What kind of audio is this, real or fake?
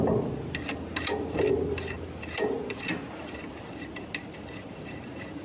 real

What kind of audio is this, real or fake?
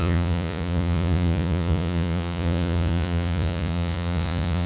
fake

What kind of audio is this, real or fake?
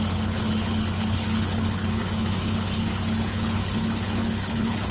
fake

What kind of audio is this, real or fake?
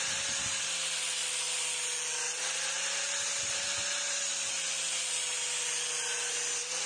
real